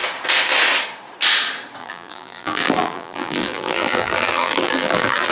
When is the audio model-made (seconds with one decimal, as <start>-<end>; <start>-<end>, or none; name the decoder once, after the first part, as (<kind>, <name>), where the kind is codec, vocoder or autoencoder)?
1.8-5.3 (vocoder, BigVGAN v2)